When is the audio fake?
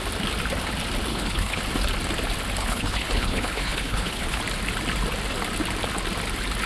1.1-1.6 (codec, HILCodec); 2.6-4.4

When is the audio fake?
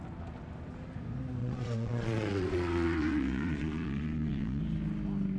1.4-4.6 (vocoder, Vocos)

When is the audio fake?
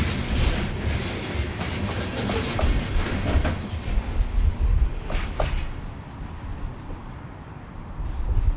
6.5-7.6 (vocoder, BigVGAN v2)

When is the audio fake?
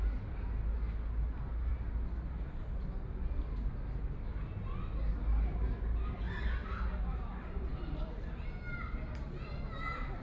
none